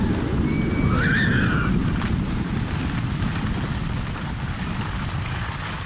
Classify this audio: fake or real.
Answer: real